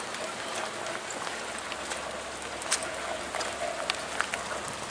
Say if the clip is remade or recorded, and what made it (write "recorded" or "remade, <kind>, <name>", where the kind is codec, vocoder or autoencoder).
recorded